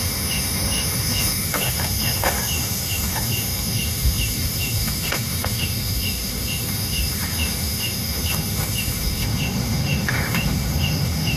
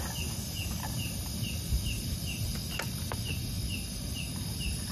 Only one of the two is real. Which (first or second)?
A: second